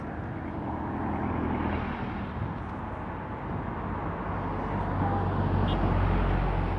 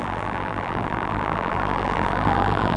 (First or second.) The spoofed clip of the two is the second